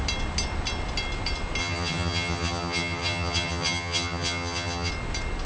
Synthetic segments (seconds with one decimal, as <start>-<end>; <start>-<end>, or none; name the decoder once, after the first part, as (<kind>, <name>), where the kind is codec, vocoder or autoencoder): 1.6-4.9 (vocoder, HiFi-GAN)